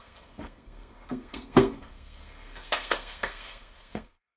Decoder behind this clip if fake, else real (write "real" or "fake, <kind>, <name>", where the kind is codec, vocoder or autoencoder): fake, codec, SNAC